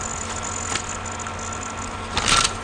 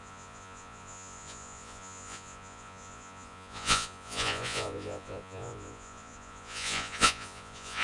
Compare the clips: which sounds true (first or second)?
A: first